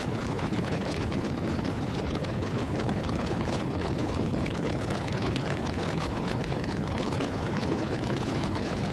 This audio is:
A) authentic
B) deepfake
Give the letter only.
B